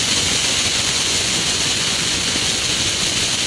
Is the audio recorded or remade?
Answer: remade